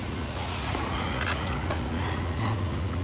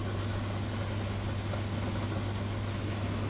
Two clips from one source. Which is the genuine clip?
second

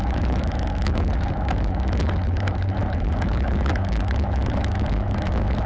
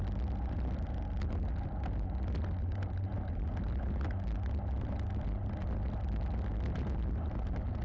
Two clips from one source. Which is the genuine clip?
second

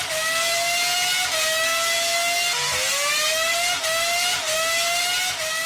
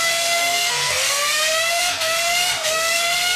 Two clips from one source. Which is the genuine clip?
first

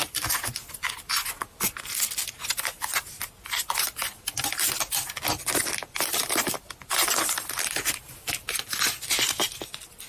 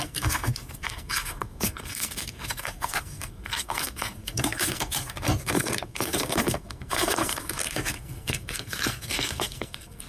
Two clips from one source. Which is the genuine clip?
first